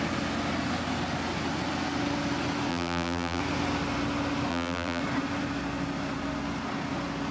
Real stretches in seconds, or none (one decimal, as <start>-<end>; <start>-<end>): 0.0-2.7; 3.4-4.5; 5.0-7.3